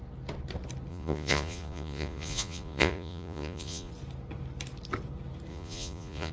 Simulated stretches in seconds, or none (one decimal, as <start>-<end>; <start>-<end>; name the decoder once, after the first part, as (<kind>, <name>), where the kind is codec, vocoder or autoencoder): 0.9-3.9 (vocoder, Vocos); 5.5-6.3